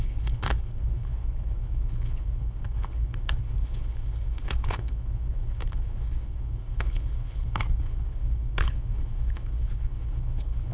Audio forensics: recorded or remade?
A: remade